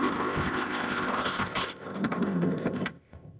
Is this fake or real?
fake